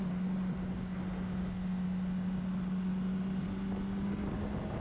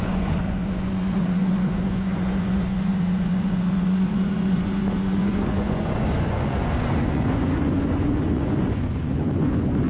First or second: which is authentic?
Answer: first